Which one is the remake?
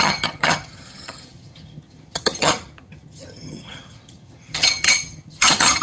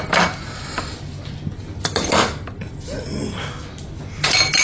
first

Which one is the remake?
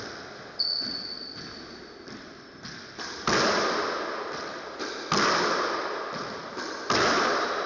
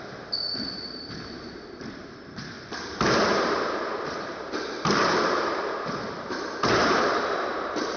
second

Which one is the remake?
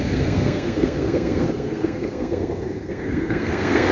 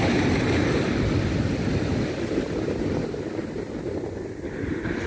first